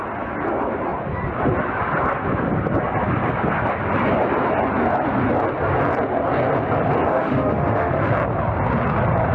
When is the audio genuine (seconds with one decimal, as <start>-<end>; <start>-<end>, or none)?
0.0-7.1; 8.1-9.3